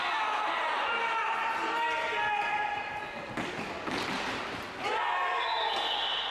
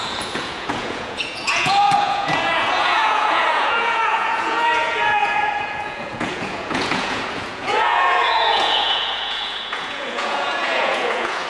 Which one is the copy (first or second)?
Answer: second